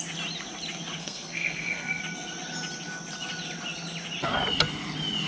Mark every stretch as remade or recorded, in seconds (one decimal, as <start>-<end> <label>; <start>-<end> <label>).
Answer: 0.0-1.0 recorded; 1.0-2.0 remade; 2.0-5.3 recorded